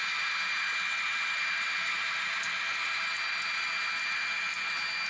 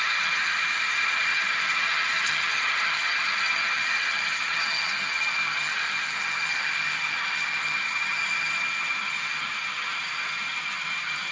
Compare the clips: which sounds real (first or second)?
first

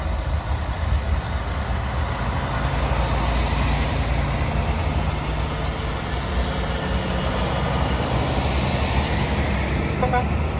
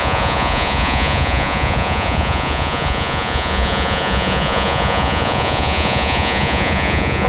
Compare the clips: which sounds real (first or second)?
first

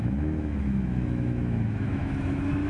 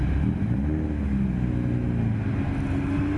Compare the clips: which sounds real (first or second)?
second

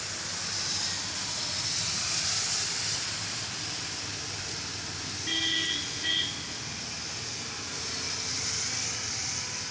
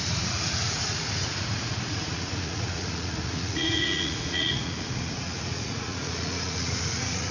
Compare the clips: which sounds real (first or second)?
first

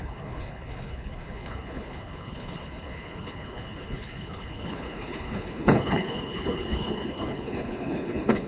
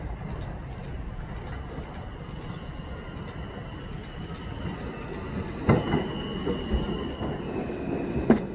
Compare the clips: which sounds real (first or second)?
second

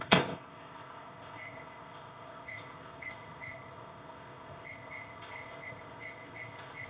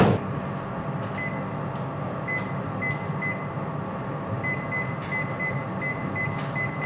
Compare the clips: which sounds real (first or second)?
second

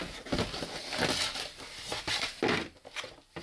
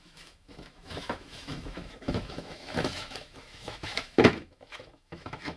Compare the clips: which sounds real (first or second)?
first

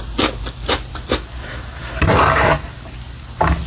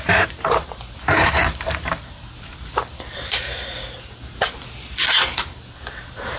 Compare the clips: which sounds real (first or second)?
first